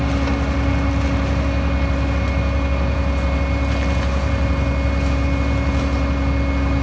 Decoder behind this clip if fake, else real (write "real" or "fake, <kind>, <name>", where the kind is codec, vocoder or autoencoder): real